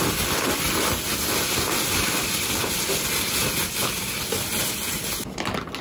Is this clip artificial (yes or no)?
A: no